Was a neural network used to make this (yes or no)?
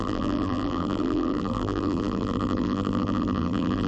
yes